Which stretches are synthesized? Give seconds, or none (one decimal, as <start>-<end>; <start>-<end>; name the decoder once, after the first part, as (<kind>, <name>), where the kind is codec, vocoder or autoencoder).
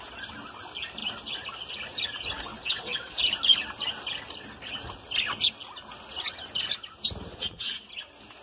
2.5-3.2 (vocoder, WaveNeXt); 7.3-7.9